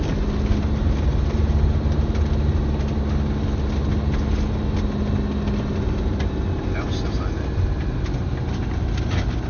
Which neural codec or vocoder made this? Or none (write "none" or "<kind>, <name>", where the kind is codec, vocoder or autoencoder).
none